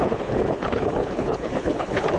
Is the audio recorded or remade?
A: remade